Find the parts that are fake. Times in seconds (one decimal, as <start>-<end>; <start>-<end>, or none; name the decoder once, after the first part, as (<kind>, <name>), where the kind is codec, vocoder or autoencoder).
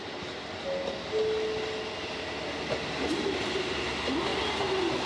none